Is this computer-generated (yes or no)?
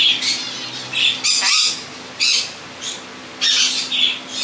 no